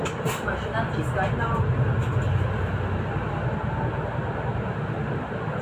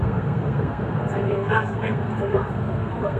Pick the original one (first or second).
first